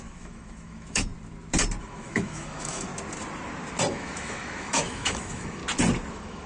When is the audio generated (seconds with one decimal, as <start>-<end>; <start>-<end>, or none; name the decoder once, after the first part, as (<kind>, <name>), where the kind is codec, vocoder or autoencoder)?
0.0-1.1 (autoencoder, DAC-VAE); 1.8-2.9; 3.9-5.6; 6.1-6.5